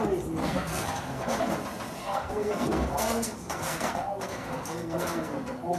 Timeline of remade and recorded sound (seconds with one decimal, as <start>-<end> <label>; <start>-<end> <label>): 0.0-0.4 recorded; 0.4-1.5 remade; 1.5-2.0 recorded; 2.0-5.8 remade